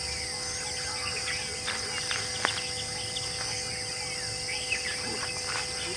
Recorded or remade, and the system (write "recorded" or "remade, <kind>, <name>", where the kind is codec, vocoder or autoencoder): recorded